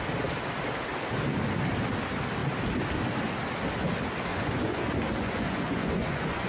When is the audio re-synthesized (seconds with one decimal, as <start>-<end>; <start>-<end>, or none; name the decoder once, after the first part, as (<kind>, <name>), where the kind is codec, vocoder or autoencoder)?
4.3-4.8 (vocoder, Vocos); 5.2-6.5